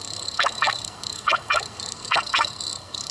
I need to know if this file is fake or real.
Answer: fake